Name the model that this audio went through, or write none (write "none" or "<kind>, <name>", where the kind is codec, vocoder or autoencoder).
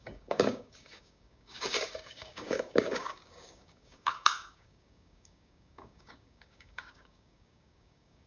codec, DAC